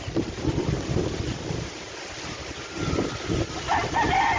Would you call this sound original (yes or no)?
yes